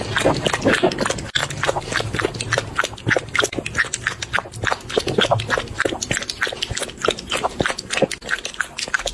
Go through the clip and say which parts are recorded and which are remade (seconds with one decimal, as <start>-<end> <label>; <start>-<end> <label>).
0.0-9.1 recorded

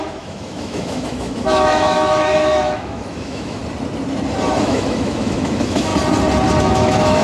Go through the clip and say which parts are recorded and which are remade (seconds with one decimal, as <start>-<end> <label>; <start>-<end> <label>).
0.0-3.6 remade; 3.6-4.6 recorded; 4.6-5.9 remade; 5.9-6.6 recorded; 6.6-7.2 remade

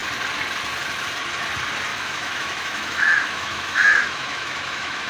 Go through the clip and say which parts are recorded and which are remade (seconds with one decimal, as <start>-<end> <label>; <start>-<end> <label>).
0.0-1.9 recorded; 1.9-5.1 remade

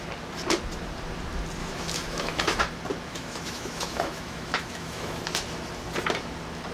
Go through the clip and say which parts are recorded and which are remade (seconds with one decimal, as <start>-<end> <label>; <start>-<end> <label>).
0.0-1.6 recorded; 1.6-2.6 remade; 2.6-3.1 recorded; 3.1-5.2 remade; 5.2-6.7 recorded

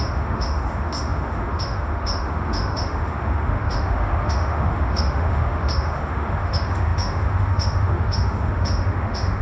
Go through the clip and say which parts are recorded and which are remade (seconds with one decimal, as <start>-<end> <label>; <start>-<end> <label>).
0.0-9.4 remade

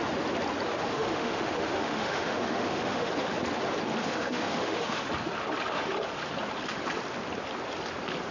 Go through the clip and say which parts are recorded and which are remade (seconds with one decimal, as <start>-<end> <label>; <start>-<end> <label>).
0.0-0.8 recorded; 0.8-3.1 remade; 3.1-4.0 recorded; 4.0-5.1 remade; 5.1-8.3 recorded

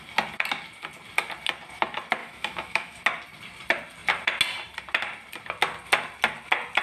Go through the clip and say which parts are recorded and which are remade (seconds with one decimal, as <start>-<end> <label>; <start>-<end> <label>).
0.0-2.2 recorded; 2.2-3.0 remade; 3.0-6.8 recorded

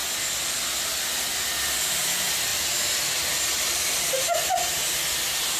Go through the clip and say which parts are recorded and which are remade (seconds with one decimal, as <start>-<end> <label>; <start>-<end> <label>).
0.0-5.6 recorded